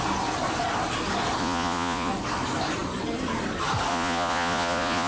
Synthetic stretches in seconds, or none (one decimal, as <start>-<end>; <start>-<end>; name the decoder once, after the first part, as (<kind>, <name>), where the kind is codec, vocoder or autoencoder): 1.4-2.1 (vocoder, Vocos); 3.9-5.1